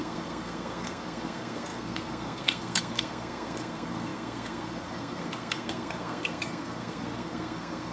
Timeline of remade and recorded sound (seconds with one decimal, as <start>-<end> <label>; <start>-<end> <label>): 0.0-7.9 remade